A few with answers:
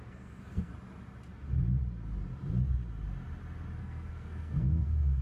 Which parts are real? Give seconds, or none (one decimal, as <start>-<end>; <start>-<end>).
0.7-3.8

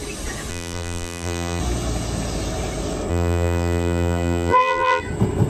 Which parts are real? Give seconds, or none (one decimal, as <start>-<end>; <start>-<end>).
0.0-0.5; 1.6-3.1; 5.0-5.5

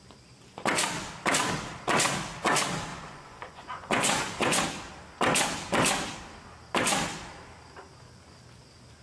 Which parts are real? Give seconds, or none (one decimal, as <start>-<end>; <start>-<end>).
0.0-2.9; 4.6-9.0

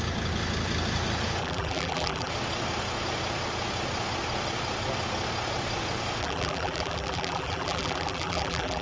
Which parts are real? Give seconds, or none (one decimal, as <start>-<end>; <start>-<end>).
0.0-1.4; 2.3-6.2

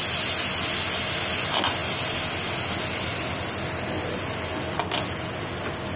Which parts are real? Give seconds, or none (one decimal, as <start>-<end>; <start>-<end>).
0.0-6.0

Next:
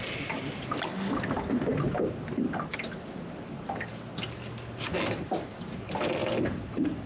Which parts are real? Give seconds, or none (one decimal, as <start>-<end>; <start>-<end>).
0.0-6.2

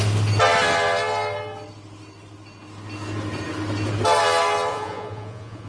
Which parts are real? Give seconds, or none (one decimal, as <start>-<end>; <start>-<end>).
0.0-4.7